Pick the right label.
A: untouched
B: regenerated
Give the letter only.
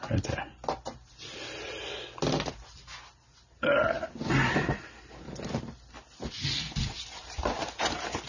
A